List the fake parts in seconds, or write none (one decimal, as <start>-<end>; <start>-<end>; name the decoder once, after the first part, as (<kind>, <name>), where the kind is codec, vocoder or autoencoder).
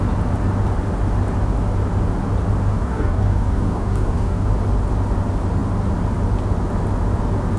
2.7-4.5 (codec, DAC)